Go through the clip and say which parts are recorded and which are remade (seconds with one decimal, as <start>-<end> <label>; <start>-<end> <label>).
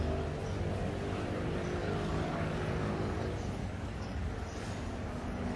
0.0-1.8 recorded; 1.8-5.6 remade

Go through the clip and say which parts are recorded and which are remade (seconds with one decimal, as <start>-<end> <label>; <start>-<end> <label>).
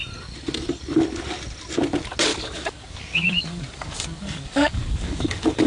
0.0-2.3 recorded; 2.3-5.7 remade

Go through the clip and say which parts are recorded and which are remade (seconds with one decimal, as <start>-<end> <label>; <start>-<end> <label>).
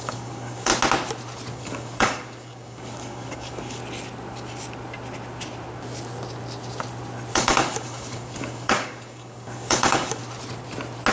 0.0-0.7 remade; 0.7-1.5 recorded; 1.5-3.8 remade; 3.8-7.3 recorded; 7.3-10.2 remade; 10.2-11.1 recorded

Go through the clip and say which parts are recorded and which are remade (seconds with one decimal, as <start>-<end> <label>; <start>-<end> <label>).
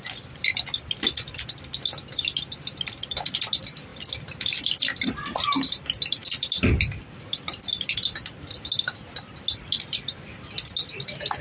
0.0-11.4 recorded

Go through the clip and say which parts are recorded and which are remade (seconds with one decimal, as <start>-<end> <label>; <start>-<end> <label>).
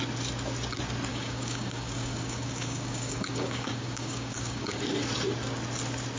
0.0-1.1 recorded; 1.1-4.8 remade; 4.8-6.2 recorded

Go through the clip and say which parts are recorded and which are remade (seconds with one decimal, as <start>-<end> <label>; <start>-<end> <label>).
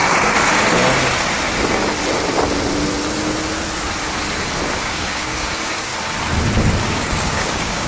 0.0-4.7 recorded; 4.7-5.9 remade; 5.9-6.8 recorded; 6.8-7.9 remade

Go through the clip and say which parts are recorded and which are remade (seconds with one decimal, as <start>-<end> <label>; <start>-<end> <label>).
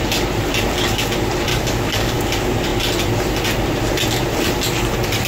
0.0-1.5 recorded; 1.5-2.2 remade; 2.2-5.3 recorded